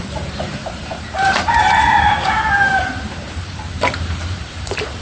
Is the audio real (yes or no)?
no